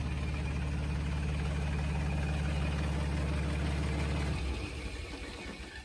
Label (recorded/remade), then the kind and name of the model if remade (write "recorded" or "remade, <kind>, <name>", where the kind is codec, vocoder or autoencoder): recorded